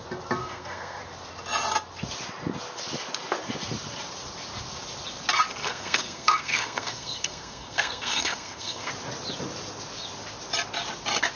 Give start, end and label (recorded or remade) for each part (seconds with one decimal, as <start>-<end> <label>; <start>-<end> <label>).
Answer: 0.0-0.4 recorded; 0.4-1.0 remade; 1.0-5.6 recorded; 5.6-8.9 remade; 8.9-11.4 recorded